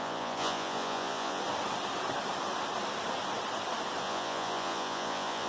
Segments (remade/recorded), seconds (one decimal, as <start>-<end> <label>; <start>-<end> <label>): 0.0-1.4 remade; 1.4-4.0 recorded; 4.0-5.5 remade